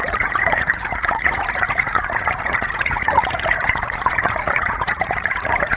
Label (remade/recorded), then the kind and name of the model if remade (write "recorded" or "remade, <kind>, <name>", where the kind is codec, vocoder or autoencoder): remade, vocoder, Vocos